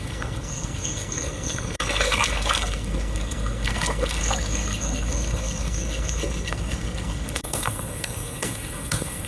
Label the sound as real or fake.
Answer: fake